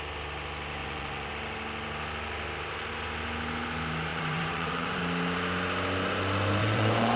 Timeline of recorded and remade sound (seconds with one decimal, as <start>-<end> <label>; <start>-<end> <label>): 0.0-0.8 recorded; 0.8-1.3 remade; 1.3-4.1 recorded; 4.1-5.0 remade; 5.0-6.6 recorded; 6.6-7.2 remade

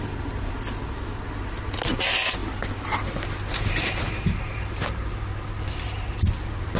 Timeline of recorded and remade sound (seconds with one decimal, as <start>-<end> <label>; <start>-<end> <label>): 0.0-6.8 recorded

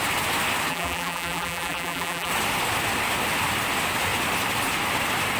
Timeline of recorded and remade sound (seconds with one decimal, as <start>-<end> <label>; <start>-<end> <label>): 0.0-0.7 recorded; 0.7-2.3 remade; 2.3-5.4 recorded

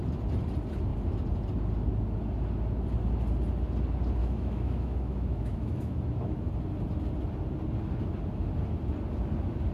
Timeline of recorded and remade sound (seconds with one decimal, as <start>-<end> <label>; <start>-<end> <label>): 0.0-4.2 recorded; 4.2-6.5 remade; 6.5-9.7 recorded

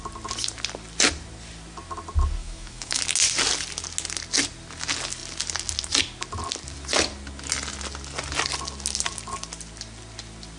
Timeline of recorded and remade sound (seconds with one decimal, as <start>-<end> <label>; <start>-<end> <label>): 0.0-2.4 recorded; 2.4-3.0 remade; 3.0-10.6 recorded

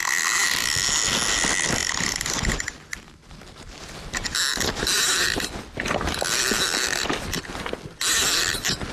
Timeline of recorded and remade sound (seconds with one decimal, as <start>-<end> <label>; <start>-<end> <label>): 0.0-8.9 recorded